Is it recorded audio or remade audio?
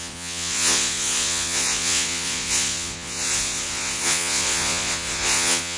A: remade